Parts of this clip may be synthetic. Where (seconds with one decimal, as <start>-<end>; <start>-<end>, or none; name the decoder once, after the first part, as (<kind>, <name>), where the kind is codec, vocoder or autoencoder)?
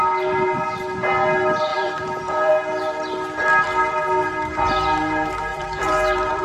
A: 1.7-2.5 (vocoder, BigVGAN v2); 5.5-6.4